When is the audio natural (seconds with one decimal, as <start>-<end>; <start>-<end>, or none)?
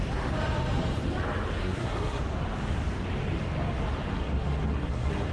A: 0.0-1.6; 2.2-4.1